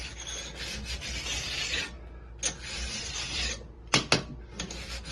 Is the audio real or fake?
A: real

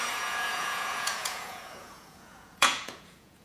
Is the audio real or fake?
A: fake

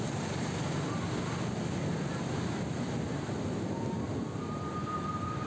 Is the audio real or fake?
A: real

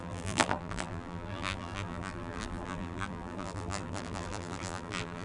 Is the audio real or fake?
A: fake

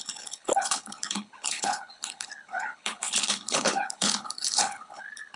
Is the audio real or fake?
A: fake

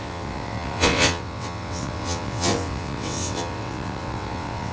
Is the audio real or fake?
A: fake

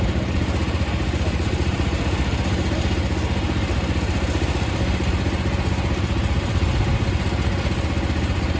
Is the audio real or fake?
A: real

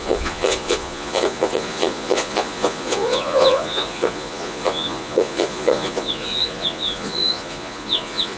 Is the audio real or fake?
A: fake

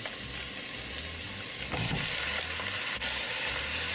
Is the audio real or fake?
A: real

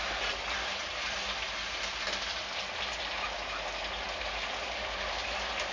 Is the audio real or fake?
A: real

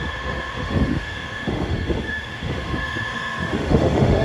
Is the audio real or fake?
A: fake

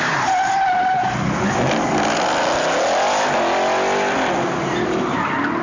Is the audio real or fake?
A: real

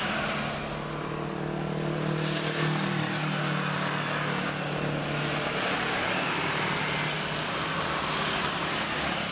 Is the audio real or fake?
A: real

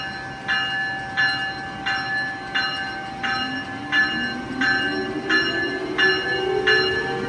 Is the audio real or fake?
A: real